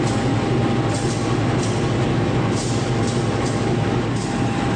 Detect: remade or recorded recorded